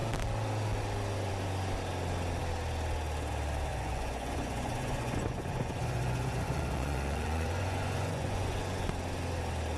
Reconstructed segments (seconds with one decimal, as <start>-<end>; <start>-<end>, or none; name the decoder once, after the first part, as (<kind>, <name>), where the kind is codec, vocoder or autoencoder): 3.7-8.9 (vocoder, Vocos)